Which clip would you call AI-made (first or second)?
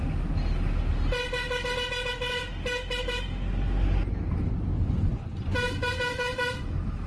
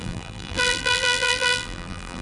second